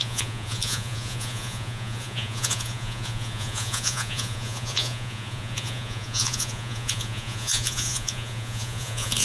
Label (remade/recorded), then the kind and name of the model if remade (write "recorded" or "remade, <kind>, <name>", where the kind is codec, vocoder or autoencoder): remade, vocoder, Vocos